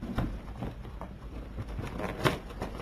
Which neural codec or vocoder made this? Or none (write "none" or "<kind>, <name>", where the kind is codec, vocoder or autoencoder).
none